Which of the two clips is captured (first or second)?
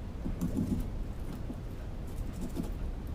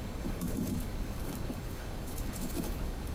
first